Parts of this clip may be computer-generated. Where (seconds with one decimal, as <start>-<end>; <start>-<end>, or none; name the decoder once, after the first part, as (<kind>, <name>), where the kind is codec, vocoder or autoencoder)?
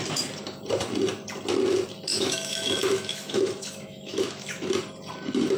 2.1-4.7 (autoencoder, DAC-VAE)